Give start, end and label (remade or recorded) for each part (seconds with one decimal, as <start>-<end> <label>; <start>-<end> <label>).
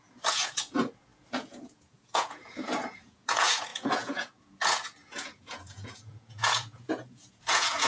0.0-7.9 remade